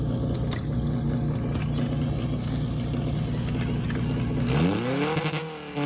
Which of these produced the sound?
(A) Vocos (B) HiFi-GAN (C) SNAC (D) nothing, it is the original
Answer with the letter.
D